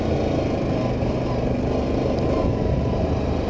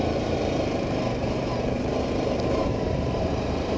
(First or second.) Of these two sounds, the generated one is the second